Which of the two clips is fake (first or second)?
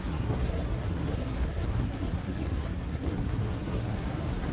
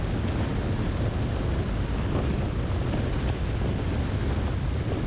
first